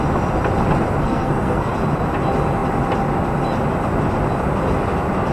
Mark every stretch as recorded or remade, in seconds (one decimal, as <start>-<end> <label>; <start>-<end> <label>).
0.0-1.0 recorded; 1.0-1.7 remade; 1.7-5.3 recorded